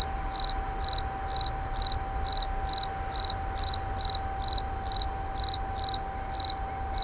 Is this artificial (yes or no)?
no